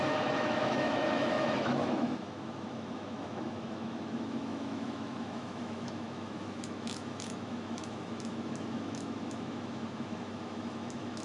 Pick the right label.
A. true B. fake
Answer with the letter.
B